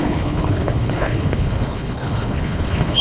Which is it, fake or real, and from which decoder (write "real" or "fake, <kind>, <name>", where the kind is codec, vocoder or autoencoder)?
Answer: fake, codec, HILCodec